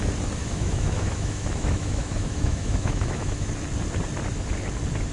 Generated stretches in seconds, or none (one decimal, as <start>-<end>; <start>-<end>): 0.4-3.5